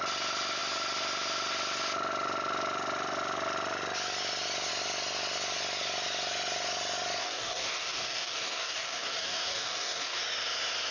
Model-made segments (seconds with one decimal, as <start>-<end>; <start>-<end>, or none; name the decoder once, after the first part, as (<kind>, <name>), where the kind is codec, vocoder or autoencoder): 7.2-10.2 (codec, DAC)